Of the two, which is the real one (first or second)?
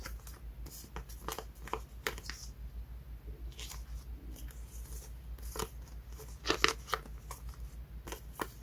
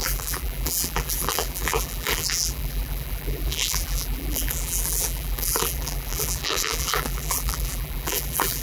first